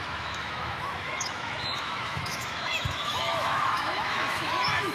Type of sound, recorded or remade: remade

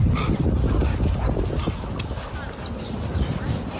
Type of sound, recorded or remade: recorded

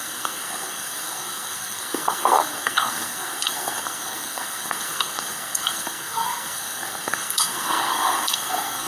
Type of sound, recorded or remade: remade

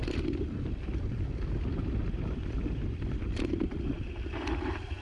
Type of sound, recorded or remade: recorded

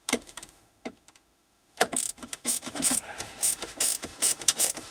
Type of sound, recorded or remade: remade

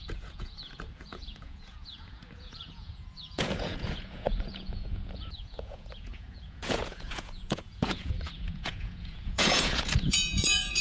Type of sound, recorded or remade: remade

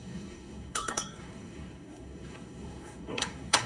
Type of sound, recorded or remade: remade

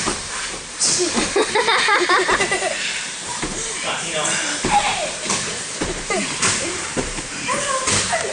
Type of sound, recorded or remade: remade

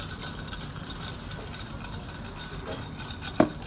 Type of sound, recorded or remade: remade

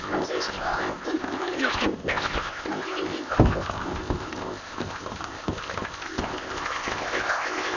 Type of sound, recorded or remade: remade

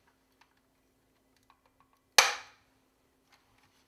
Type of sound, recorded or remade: recorded